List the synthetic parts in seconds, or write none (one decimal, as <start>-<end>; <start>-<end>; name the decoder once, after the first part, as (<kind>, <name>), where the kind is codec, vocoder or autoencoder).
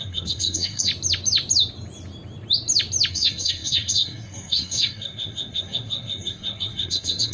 0.0-0.9 (codec, SNAC); 3.1-7.3